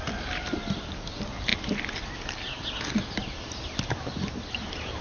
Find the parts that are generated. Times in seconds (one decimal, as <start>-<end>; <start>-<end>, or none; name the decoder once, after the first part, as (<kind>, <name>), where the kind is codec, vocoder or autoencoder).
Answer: none